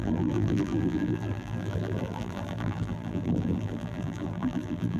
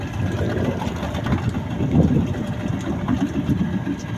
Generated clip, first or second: first